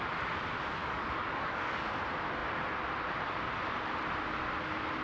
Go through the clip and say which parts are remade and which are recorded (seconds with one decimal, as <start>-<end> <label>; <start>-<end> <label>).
0.0-0.8 recorded; 0.8-1.9 remade; 1.9-5.0 recorded